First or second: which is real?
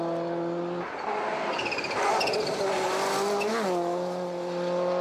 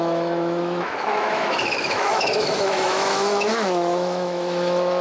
first